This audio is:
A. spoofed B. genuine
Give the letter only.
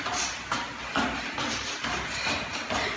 B